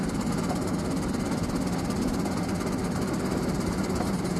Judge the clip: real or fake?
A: real